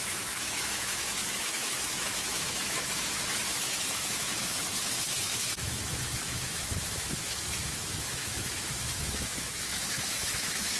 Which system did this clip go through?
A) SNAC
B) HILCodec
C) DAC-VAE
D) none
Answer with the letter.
C